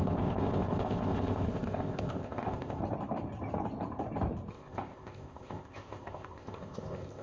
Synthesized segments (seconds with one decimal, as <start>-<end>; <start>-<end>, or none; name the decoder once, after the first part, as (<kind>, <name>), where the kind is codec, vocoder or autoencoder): 0.0-2.8 (codec, ZipCodec); 4.5-7.2